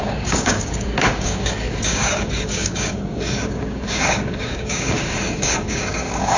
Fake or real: fake